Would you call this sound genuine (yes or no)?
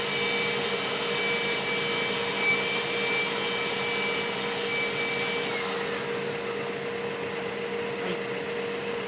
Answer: yes